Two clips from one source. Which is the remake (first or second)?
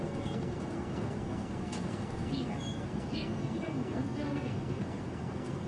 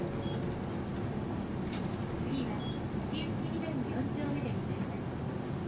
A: first